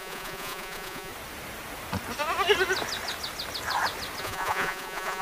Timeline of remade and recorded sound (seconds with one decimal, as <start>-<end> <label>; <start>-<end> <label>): 0.0-1.1 remade; 1.1-4.2 recorded; 4.2-5.2 remade

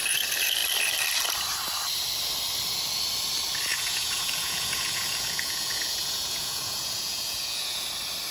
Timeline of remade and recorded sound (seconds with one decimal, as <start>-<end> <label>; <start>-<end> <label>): 0.0-3.7 recorded; 3.7-7.9 remade; 7.9-8.3 recorded

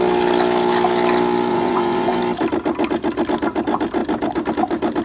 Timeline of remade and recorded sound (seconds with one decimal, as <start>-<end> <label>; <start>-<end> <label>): 0.0-1.5 recorded; 1.5-2.2 remade; 2.2-5.0 recorded

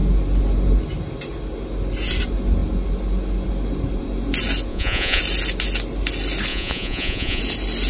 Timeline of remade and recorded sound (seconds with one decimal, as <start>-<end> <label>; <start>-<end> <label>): 0.0-4.7 recorded; 4.7-5.2 remade; 5.2-6.5 recorded; 6.5-7.4 remade; 7.4-7.9 recorded